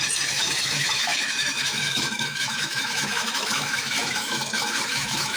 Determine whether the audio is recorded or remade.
remade